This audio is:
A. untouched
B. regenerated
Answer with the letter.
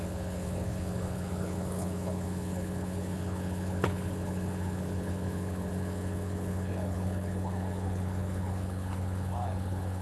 B